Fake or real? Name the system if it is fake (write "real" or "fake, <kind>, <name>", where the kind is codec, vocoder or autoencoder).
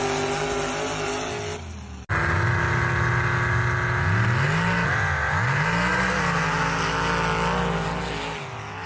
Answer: real